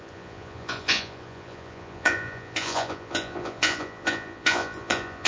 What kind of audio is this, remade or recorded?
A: remade